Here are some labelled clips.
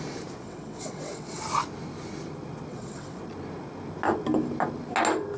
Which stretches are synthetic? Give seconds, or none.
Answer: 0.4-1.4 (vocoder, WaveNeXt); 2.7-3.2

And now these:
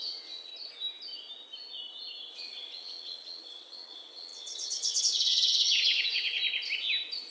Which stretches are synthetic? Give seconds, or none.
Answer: 0.0-0.5 (vocoder, WaveNeXt); 2.3-6.4